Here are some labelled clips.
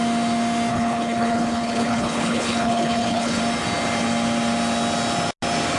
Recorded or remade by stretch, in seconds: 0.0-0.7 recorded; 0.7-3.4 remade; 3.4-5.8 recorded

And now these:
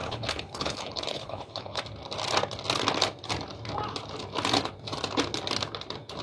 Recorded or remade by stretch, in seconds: 0.0-1.8 remade; 1.8-6.2 recorded

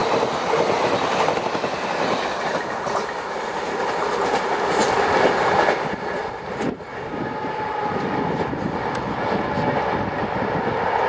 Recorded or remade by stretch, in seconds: 0.0-11.1 recorded

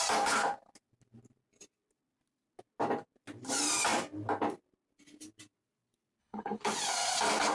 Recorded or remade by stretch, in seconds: 0.0-6.2 recorded; 6.2-6.7 remade; 6.7-7.5 recorded

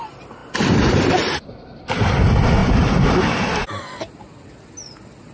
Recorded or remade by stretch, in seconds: 0.0-5.3 recorded

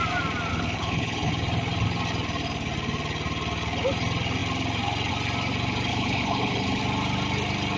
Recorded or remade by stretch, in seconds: 0.0-0.5 recorded; 0.5-1.3 remade; 1.3-5.9 recorded; 5.9-6.8 remade; 6.8-7.8 recorded

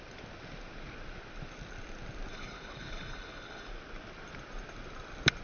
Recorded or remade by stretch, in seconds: 0.0-2.3 recorded; 2.3-3.7 remade; 3.7-5.4 recorded

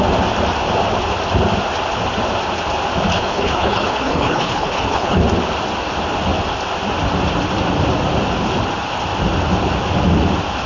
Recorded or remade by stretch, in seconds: 0.0-3.1 recorded; 3.1-5.2 remade; 5.2-10.7 recorded